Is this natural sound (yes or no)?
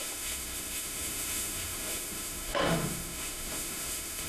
no